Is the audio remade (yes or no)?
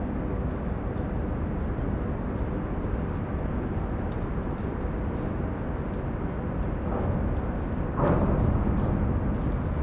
no